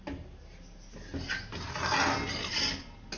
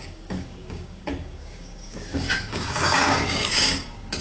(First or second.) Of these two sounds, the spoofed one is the second